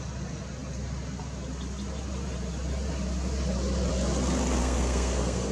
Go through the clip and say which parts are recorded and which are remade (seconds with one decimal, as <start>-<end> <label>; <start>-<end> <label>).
0.0-4.6 recorded; 4.6-5.5 remade

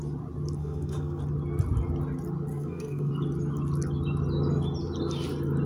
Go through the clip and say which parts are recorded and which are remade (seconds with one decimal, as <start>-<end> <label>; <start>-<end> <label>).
0.0-0.6 recorded; 0.6-1.2 remade; 1.2-2.5 recorded; 2.5-3.1 remade; 3.1-5.7 recorded

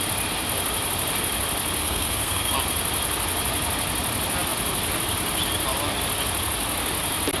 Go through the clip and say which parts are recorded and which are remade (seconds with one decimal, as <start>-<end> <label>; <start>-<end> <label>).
0.0-1.8 recorded; 1.8-2.5 remade; 2.5-7.4 recorded

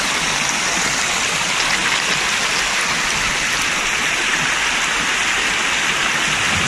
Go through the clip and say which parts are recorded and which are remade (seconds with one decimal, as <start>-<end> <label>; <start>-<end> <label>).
0.0-6.7 recorded